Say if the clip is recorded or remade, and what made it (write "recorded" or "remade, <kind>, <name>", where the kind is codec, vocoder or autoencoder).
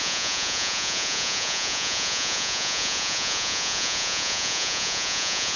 remade, vocoder, Vocos